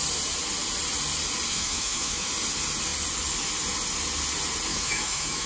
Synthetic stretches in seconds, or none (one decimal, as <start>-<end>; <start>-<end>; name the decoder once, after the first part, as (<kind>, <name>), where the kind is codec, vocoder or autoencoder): 1.5-2.3 (autoencoder, DAC-VAE); 4.7-5.5